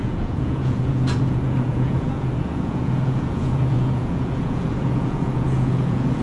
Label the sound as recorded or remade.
remade